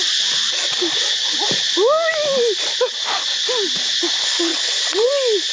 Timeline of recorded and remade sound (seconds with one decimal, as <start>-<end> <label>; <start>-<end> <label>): 0.0-4.5 recorded; 4.5-5.1 remade; 5.1-5.5 recorded